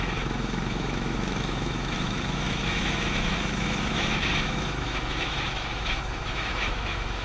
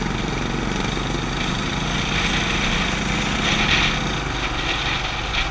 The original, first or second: second